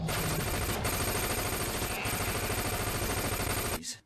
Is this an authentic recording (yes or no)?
yes